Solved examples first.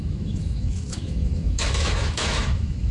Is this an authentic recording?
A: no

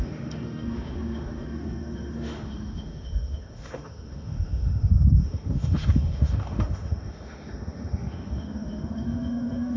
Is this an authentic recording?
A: no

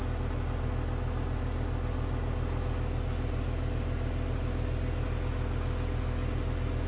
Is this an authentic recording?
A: yes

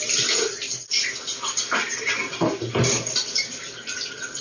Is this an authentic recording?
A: yes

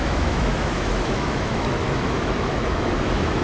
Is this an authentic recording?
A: no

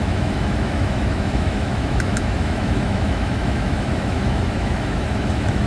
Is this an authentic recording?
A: no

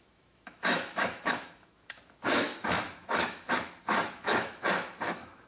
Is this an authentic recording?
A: no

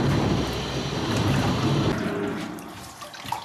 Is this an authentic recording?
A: yes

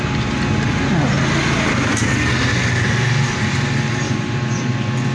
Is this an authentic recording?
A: yes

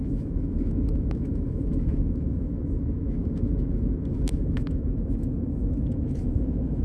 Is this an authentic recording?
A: no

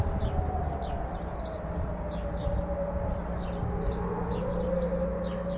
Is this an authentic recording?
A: yes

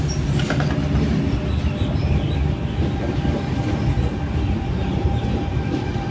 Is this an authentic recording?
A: yes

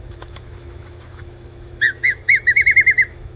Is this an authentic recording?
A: no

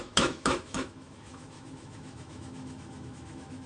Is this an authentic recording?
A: no